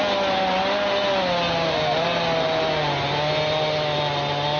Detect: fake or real real